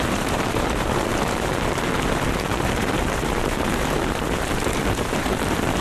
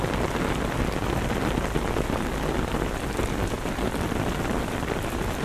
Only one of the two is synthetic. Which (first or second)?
first